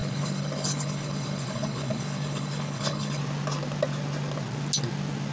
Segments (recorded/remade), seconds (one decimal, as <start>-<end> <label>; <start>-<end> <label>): 0.0-3.2 remade; 3.2-5.3 recorded